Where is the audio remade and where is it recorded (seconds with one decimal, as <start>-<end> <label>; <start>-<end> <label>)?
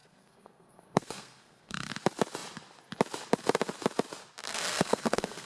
0.0-1.9 remade; 1.9-4.5 recorded; 4.5-5.5 remade